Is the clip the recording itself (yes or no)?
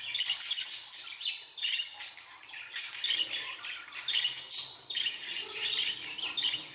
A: yes